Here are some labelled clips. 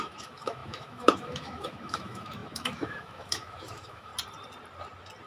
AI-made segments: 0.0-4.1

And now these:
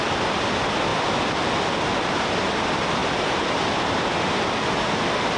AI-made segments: none

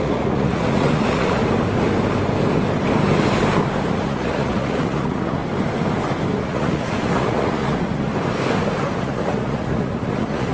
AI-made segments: 0.0-1.4; 3.9-5.4; 6.4-8.1; 9.0-10.5

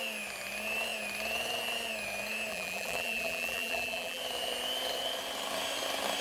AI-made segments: 2.5-4.2